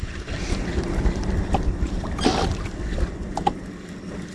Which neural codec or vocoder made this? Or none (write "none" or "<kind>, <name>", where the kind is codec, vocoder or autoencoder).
none